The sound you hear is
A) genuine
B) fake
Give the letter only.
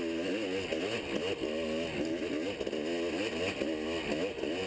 A